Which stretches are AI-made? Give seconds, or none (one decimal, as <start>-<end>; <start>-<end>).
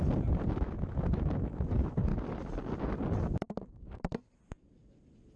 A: 0.6-2.1